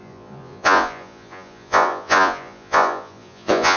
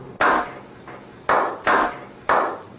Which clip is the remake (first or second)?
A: first